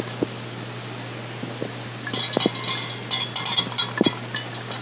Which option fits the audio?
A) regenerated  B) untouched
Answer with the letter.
B